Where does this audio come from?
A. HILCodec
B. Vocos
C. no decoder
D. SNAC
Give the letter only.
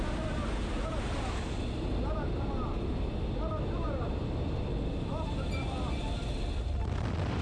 C